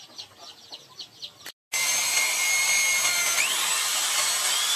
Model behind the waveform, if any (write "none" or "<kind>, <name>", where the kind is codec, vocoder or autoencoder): none